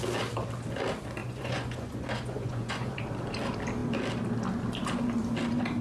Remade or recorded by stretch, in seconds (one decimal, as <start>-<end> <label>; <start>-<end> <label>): 0.0-1.2 recorded; 1.2-3.0 remade; 3.0-5.8 recorded